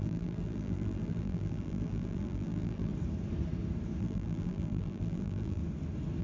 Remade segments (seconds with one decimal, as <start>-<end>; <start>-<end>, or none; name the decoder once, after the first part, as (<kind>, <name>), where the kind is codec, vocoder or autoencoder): 0.0-2.9 (vocoder, BigVGAN v2); 4.0-5.6